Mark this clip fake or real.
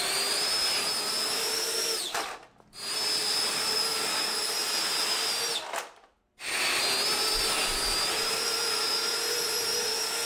real